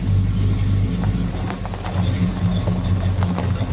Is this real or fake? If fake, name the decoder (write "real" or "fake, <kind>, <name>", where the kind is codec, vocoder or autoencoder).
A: real